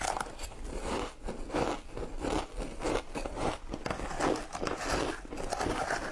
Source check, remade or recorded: recorded